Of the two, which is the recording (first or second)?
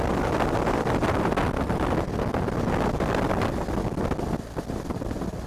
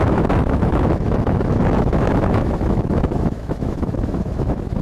first